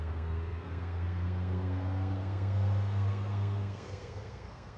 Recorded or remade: remade